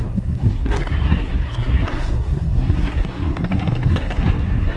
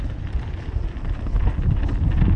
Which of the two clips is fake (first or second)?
first